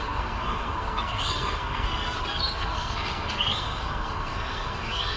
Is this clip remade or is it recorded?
remade